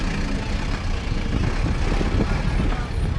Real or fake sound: real